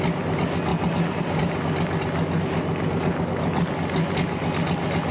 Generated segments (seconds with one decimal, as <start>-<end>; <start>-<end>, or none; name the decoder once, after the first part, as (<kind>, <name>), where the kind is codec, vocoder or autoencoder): none